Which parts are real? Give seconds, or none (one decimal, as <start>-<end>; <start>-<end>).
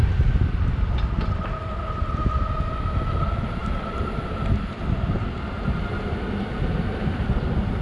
0.0-7.8